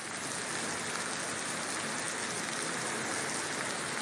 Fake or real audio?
real